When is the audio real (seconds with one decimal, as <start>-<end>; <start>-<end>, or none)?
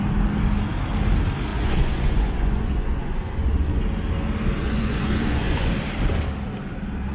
0.0-1.5; 3.8-4.6; 5.7-7.1